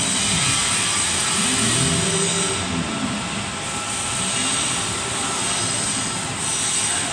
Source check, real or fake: real